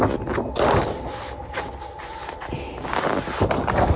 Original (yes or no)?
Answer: yes